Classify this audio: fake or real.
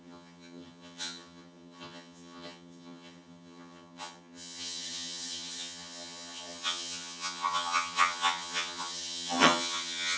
fake